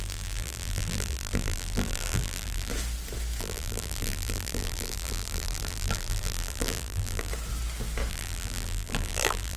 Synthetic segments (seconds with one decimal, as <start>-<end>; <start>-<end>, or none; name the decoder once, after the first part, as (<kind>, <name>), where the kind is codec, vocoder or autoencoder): 0.0-2.7 (vocoder, BigVGAN v2); 3.4-7.3; 8.1-9.6